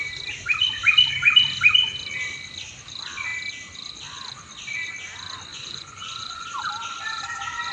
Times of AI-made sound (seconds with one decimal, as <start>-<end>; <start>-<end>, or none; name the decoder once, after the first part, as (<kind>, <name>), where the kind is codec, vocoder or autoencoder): 5.5-6.5 (vocoder, Vocos)